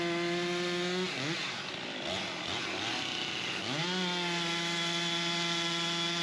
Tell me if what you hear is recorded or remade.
recorded